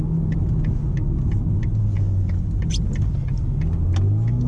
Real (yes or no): yes